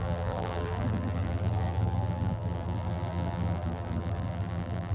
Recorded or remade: remade